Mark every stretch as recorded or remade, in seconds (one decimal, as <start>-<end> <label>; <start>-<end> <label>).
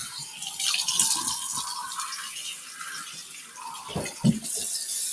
0.0-5.1 recorded